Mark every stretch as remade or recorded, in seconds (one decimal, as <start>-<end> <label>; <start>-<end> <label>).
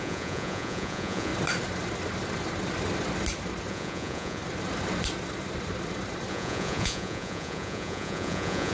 0.0-1.3 remade; 1.3-3.7 recorded; 3.7-4.4 remade; 4.4-6.3 recorded; 6.3-8.7 remade